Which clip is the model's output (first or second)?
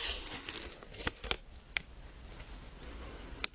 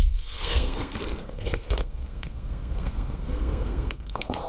second